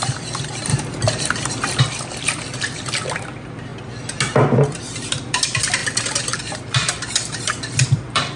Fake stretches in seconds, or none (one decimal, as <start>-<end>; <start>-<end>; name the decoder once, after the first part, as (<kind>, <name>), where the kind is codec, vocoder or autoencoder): 0.0-3.7 (vocoder, BigVGAN v2); 4.8-5.8; 6.4-8.4